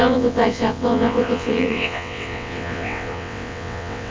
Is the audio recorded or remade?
remade